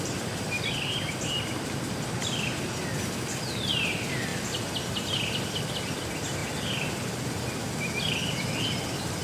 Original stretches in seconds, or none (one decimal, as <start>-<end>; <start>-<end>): 0.0-9.2